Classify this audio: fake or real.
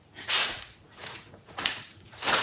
fake